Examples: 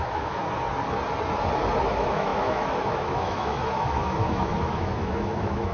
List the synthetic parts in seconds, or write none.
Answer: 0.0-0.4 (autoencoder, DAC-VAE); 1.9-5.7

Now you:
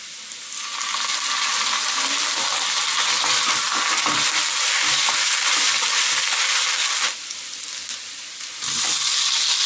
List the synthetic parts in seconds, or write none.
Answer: none

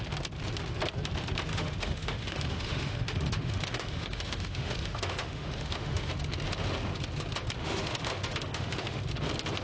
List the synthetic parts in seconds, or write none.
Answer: 1.5-6.1 (autoencoder, DAC-VAE); 7.6-9.0

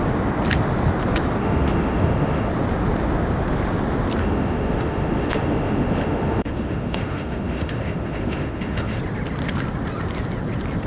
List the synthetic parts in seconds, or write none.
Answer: 1.4-2.5 (autoencoder, DAC-VAE); 4.2-9.0

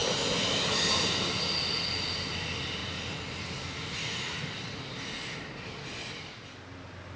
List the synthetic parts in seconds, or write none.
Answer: none

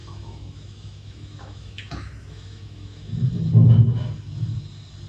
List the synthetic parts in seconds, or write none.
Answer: 0.0-3.1 (autoencoder, DAC-VAE)

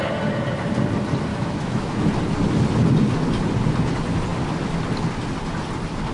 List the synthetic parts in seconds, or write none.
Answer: 1.3-2.1 (autoencoder, DAC-VAE)

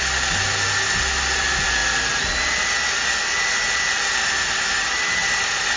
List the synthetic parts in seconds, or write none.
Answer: none